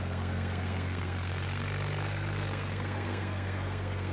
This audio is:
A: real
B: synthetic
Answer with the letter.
B